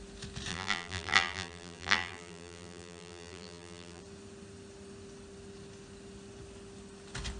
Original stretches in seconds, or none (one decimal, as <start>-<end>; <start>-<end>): 0.0-0.5; 4.0-7.4